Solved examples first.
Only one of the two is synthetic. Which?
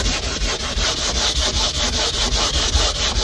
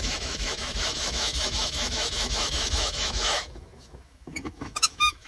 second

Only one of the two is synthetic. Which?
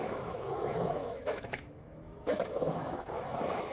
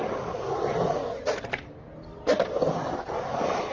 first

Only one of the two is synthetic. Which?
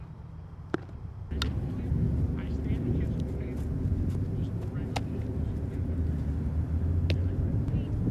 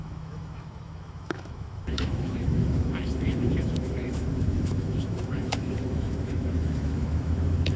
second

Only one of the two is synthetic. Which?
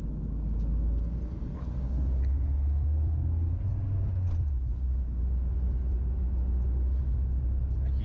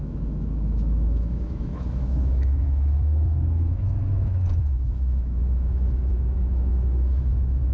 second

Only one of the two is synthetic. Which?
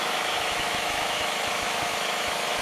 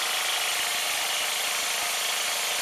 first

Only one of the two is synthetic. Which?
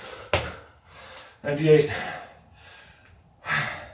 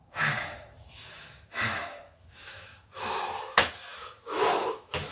second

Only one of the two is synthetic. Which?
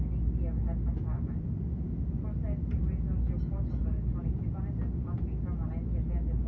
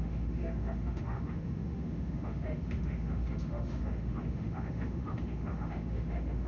second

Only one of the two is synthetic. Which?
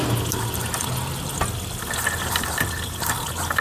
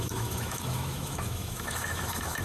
second